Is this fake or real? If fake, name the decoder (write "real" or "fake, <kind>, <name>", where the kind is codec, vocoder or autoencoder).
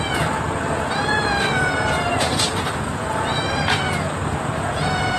fake, vocoder, Vocos